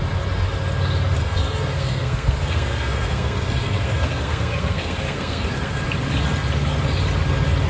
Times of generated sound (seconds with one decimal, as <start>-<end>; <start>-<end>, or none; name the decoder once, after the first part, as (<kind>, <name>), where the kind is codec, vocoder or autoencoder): 1.2-5.8 (codec, SNAC)